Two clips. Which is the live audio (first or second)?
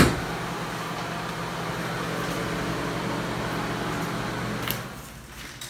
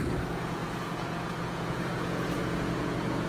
first